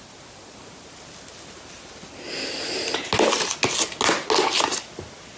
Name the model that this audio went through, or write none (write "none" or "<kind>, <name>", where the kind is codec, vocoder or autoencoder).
none